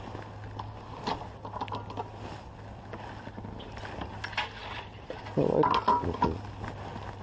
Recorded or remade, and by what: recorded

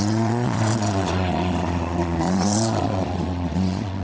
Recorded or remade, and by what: remade, vocoder, Vocos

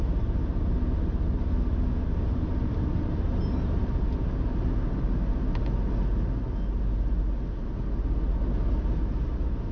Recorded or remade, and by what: recorded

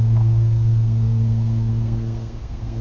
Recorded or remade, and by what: remade, codec, SNAC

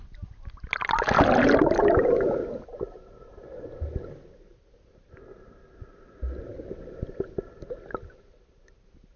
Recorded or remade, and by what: recorded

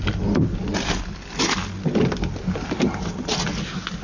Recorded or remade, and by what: recorded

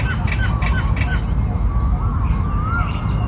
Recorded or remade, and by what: recorded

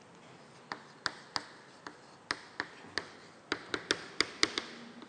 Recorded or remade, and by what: recorded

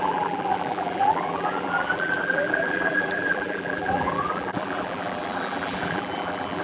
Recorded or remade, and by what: remade, vocoder, BigVGAN v2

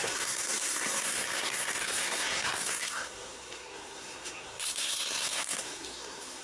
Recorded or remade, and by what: remade, codec, SNAC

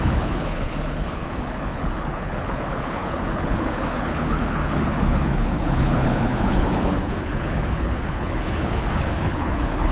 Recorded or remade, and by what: remade, codec, HILCodec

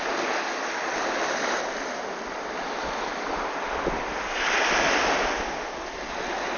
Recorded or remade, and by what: recorded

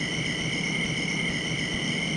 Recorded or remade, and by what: recorded